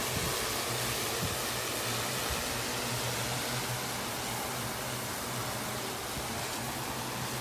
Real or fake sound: real